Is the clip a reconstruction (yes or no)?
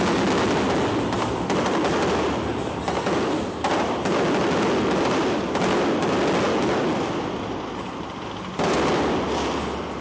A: no